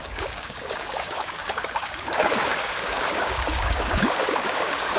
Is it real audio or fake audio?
fake